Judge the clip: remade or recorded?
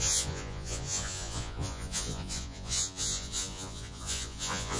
remade